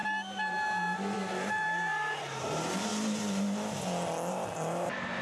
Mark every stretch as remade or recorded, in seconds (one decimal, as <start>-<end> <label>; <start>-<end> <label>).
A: 0.0-1.5 recorded; 1.5-2.9 remade; 2.9-4.3 recorded; 4.3-5.2 remade